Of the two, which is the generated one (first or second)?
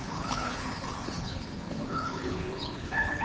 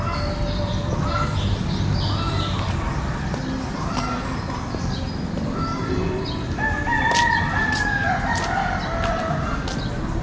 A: first